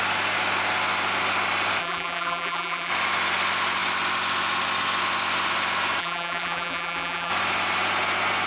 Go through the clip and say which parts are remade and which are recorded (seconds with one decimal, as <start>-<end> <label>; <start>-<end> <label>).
0.0-1.8 recorded; 1.8-2.9 remade; 2.9-6.0 recorded; 6.0-7.3 remade; 7.3-8.5 recorded